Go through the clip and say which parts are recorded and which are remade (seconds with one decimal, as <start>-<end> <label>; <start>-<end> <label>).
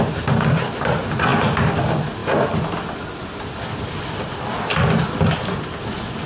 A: 0.0-6.3 recorded